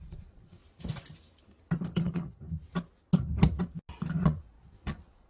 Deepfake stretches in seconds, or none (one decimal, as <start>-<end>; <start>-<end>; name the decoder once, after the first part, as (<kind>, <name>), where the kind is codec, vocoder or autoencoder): 0.0-0.6 (vocoder, Vocos); 2.0-2.6; 4.2-5.3